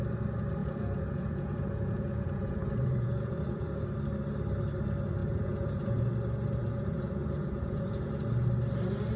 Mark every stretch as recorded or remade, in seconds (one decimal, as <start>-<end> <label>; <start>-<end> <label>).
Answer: 0.0-0.6 recorded; 0.6-3.8 remade; 3.8-5.2 recorded; 5.2-6.0 remade; 6.0-6.6 recorded; 6.6-8.1 remade; 8.1-9.2 recorded